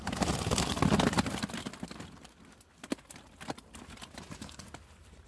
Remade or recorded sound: recorded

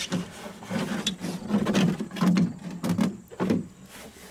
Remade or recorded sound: recorded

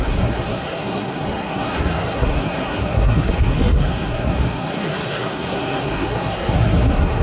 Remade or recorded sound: remade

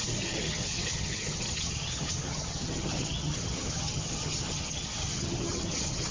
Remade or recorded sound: remade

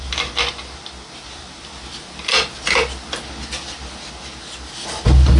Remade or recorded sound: recorded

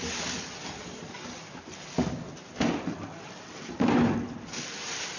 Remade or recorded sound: recorded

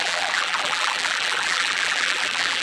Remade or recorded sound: remade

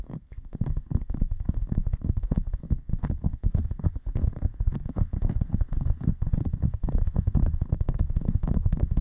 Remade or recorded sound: remade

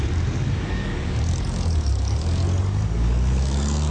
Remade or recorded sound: remade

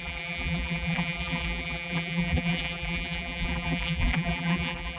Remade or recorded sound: remade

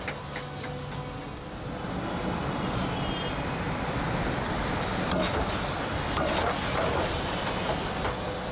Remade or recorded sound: recorded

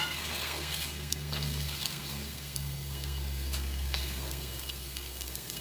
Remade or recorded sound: remade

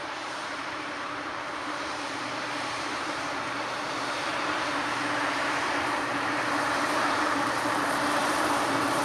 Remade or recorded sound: remade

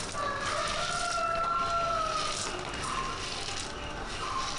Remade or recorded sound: recorded